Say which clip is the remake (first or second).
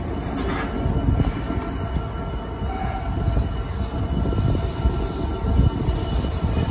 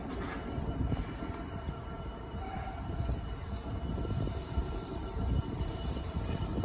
second